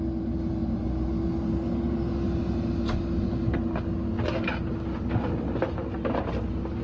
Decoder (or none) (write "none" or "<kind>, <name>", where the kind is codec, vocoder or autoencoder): none